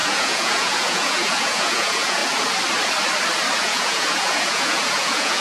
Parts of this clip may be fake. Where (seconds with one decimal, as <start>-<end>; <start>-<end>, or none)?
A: 0.0-2.2; 3.6-5.4